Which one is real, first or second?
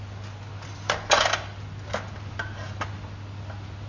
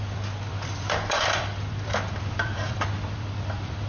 first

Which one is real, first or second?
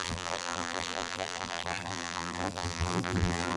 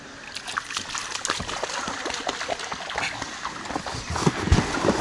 second